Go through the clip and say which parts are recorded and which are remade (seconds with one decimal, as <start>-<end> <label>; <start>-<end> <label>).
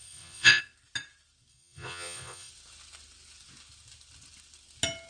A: 0.0-0.6 remade; 0.6-1.5 recorded; 1.5-2.5 remade; 2.5-5.1 recorded